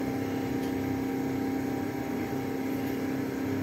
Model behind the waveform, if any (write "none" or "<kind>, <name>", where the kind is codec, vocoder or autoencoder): none